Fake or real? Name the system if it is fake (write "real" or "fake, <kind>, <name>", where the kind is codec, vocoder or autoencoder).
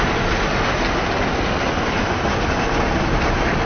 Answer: real